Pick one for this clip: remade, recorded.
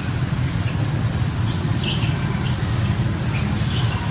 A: recorded